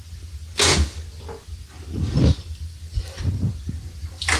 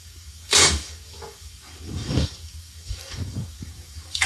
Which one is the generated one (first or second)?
second